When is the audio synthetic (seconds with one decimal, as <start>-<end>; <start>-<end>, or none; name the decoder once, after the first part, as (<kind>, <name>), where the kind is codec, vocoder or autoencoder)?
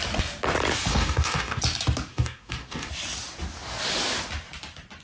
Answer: 0.9-1.6 (codec, DAC); 2.1-2.9